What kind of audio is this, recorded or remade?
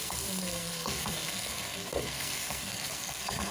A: remade